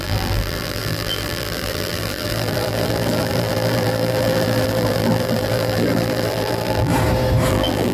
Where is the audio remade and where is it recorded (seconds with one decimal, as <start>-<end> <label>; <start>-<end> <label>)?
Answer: 0.0-6.9 remade; 6.9-7.5 recorded; 7.5-7.9 remade